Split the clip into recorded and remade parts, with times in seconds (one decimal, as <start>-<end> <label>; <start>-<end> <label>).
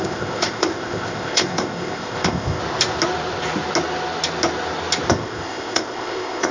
0.0-2.6 remade; 2.6-5.1 recorded; 5.1-6.5 remade